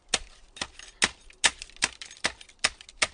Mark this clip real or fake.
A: real